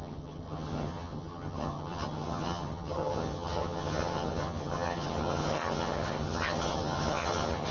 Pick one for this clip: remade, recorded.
remade